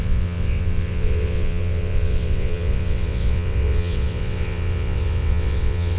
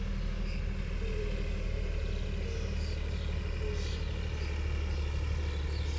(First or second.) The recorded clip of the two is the second